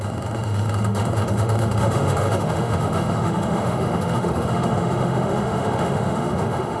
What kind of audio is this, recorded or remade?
remade